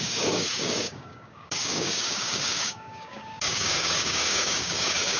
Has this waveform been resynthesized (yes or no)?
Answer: yes